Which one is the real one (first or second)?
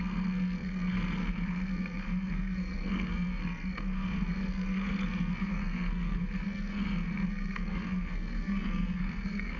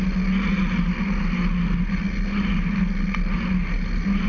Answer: second